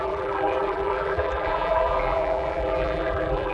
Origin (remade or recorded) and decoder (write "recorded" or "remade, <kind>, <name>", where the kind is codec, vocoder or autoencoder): remade, vocoder, BigVGAN v2